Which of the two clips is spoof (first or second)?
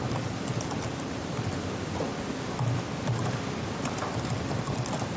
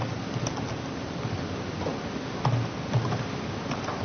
first